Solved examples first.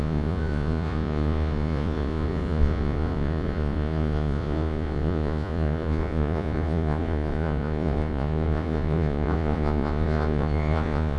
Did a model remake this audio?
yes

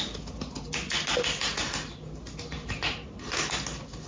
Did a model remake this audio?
no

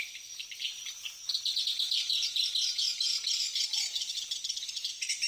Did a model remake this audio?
no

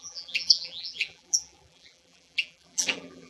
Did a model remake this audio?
yes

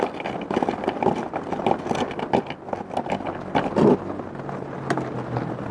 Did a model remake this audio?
no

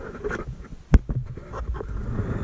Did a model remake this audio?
no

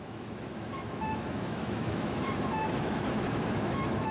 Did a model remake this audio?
yes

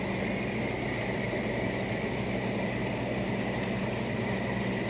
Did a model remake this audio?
yes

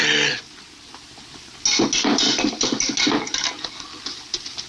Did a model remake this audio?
no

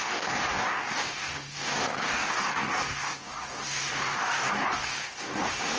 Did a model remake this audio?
yes